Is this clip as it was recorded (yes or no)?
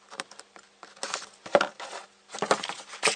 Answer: yes